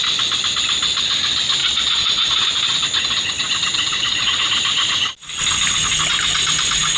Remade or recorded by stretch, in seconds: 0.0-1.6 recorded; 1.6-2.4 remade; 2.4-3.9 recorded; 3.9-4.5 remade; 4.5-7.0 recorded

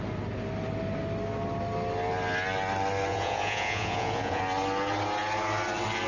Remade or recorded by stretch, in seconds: 0.0-3.1 recorded; 3.1-4.4 remade; 4.4-6.1 recorded

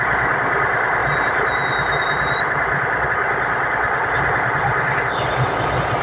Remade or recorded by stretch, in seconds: 0.0-1.0 recorded; 1.0-3.1 remade; 3.1-6.0 recorded

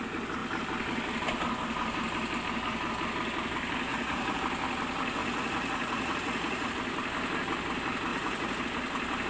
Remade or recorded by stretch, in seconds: 0.0-3.9 recorded; 3.9-4.4 remade; 4.4-5.2 recorded; 5.2-6.7 remade; 6.7-8.1 recorded; 8.1-8.6 remade; 8.6-9.3 recorded

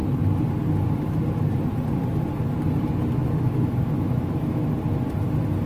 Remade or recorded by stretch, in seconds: 0.0-3.2 recorded; 3.2-4.7 remade; 4.7-5.7 recorded

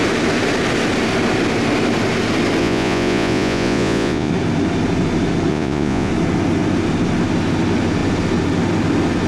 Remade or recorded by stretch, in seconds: 0.0-2.6 recorded; 2.6-4.3 remade; 4.3-5.5 recorded; 5.5-6.1 remade; 6.1-9.3 recorded